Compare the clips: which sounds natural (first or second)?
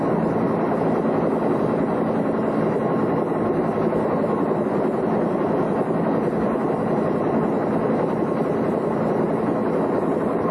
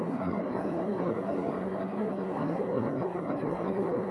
first